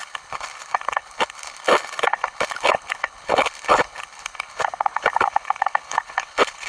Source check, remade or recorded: remade